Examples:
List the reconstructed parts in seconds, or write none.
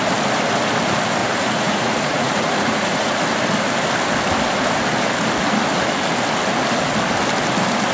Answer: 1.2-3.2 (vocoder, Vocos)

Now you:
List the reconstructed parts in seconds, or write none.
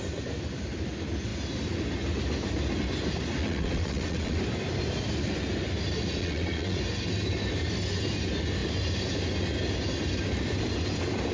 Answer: 3.4-4.4 (vocoder, WaveNeXt); 6.2-6.8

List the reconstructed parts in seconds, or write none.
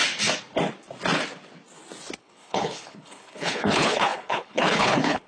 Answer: 2.2-5.3 (codec, HILCodec)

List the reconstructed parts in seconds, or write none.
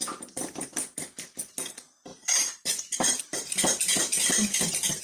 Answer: 2.1-3.2 (vocoder, BigVGAN v2); 4.2-5.0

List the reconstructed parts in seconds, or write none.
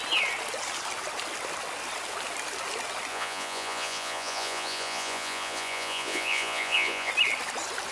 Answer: 3.1-7.1 (vocoder, Vocos)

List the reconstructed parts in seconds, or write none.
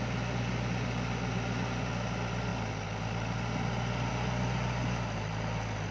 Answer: none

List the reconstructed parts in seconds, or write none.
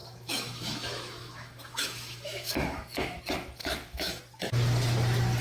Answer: 0.0-3.2 (autoencoder, DAC-VAE); 3.6-4.2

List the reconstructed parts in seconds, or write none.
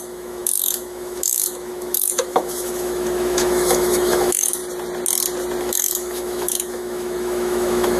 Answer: 0.0-4.6 (autoencoder, DAC-VAE); 5.6-8.0